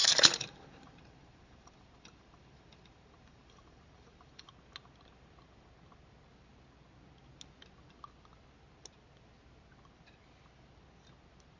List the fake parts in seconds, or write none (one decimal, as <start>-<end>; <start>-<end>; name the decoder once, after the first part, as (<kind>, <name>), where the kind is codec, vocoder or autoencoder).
0.0-4.5 (vocoder, BigVGAN v2)